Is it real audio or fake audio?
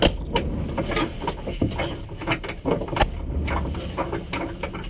real